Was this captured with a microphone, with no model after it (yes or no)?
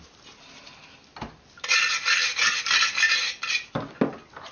yes